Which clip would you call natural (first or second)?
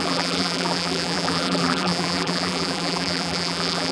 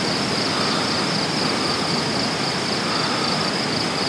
second